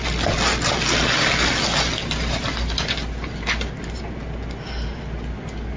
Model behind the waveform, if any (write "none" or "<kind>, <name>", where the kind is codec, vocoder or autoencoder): none